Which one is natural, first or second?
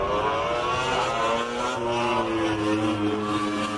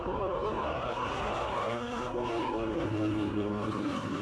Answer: first